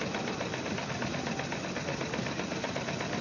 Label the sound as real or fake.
real